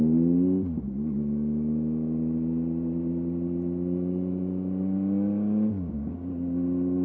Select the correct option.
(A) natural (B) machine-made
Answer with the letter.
A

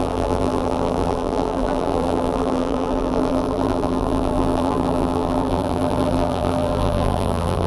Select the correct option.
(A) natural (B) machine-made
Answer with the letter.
B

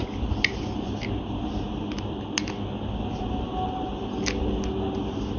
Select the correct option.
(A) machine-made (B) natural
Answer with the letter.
B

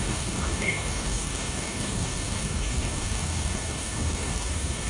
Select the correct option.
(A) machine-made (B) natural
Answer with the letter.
A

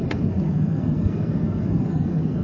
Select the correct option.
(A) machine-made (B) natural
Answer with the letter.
A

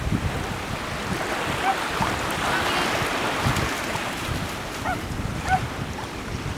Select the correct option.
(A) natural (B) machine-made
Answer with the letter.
A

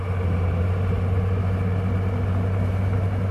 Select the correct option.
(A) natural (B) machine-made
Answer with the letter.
A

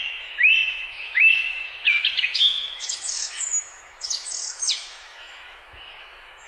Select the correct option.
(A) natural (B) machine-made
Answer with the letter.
B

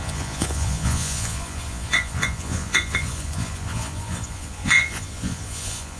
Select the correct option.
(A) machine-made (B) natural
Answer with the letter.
A